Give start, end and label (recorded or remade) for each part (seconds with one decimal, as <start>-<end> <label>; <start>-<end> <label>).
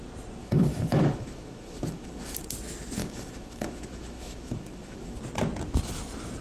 0.0-0.4 recorded; 0.4-2.4 remade; 2.4-3.0 recorded; 3.0-5.2 remade; 5.2-6.4 recorded